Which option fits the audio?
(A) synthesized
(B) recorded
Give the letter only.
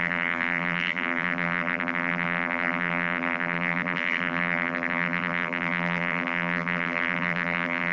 A